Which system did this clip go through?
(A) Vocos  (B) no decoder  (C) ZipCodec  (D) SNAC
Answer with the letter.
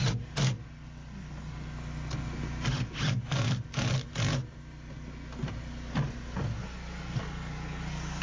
B